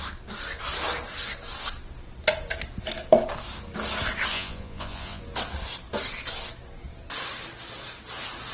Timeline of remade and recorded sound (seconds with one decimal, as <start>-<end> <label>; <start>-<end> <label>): 0.0-4.3 recorded; 4.3-5.2 remade; 5.2-8.5 recorded